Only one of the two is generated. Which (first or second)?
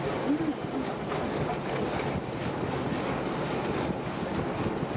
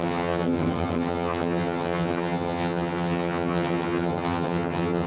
second